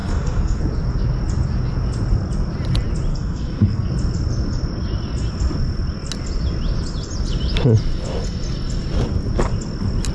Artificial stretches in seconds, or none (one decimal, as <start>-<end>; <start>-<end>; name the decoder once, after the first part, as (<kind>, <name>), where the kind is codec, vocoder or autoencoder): 0.0-0.6 (codec, SNAC); 3.1-3.9